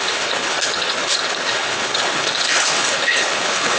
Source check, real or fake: fake